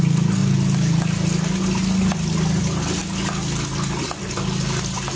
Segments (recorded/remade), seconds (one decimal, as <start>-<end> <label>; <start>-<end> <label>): 0.0-5.2 recorded